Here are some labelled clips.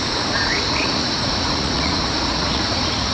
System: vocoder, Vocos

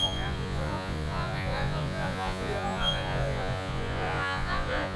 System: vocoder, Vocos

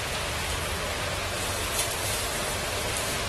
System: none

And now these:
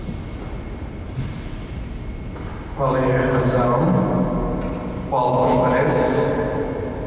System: none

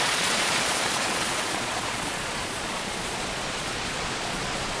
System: vocoder, Vocos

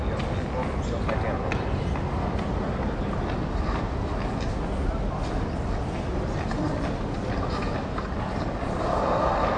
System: none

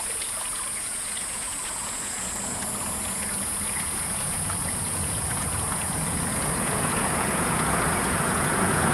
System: vocoder, Vocos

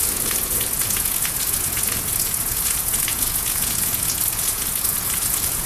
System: vocoder, Vocos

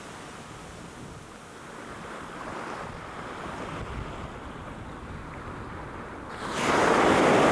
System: none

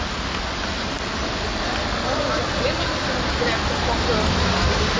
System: none